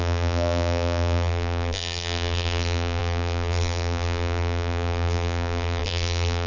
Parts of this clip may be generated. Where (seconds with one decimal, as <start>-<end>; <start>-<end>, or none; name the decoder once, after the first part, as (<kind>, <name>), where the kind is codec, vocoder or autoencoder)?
0.0-6.5 (vocoder, BigVGAN v2)